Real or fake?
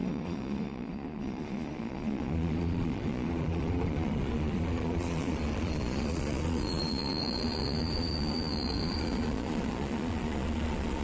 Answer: fake